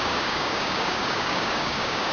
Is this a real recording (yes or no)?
no